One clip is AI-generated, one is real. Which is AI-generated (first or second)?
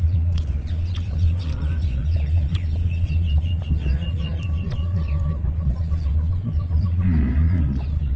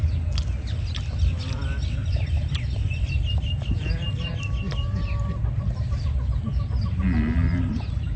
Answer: first